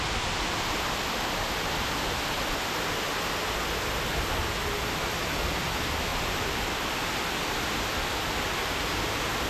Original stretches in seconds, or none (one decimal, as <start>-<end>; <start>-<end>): 0.0-6.1; 6.9-9.5